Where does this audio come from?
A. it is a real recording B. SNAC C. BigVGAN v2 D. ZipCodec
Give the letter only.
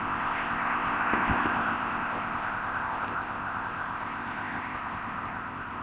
D